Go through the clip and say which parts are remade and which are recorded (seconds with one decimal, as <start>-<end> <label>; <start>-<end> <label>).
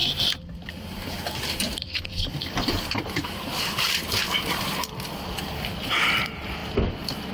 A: 0.0-0.7 recorded; 0.7-6.6 remade; 6.6-7.3 recorded